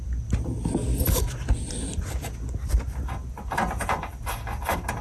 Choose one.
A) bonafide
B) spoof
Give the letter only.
A